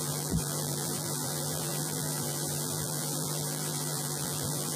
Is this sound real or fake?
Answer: fake